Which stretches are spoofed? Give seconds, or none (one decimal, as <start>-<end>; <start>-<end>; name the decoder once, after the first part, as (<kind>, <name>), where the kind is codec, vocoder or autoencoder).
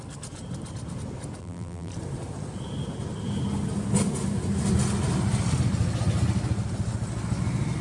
1.4-1.9 (vocoder, BigVGAN v2)